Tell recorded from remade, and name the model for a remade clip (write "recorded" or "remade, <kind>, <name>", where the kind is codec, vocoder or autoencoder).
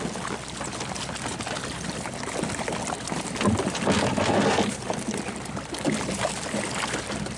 recorded